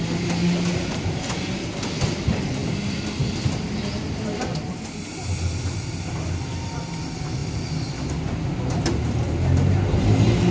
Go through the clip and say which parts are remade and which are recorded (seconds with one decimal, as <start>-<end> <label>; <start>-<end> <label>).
0.0-10.5 recorded